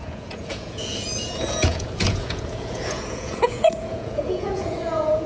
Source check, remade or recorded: remade